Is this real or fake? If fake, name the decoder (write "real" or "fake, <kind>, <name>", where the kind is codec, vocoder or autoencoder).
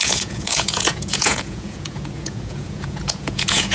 fake, vocoder, Vocos